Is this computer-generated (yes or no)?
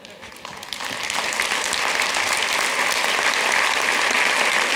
no